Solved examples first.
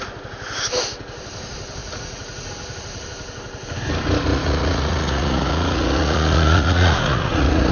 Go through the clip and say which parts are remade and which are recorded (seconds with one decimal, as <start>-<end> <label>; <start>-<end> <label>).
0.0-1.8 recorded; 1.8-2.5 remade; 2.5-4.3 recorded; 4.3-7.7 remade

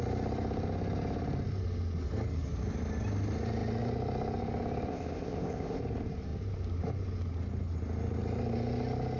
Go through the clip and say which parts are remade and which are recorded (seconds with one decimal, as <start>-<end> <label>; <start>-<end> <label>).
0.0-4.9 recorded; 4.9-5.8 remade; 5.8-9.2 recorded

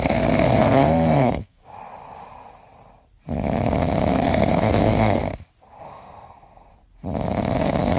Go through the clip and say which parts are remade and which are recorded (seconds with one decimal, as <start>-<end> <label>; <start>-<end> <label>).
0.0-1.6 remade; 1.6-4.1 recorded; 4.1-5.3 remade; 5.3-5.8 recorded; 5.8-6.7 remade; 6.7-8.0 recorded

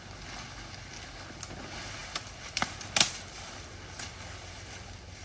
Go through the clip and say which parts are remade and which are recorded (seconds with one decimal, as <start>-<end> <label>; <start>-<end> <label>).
0.0-5.2 recorded

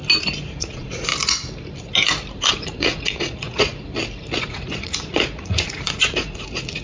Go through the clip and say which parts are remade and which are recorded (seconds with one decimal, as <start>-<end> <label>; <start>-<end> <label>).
0.0-0.6 recorded; 0.6-1.1 remade; 1.1-2.5 recorded; 2.5-3.7 remade; 3.7-4.4 recorded; 4.4-6.8 remade

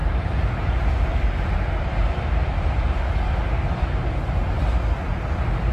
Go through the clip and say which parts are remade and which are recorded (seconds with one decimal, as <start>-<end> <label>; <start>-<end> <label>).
0.0-3.4 remade; 3.4-5.7 recorded